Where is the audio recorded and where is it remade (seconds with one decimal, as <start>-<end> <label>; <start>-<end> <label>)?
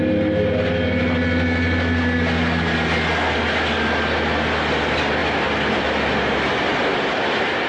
0.0-7.7 recorded